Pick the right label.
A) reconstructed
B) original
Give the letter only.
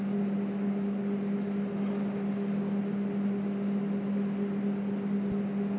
B